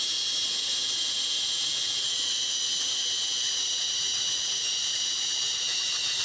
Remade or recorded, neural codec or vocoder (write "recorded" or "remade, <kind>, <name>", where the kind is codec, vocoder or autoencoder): remade, vocoder, BigVGAN v2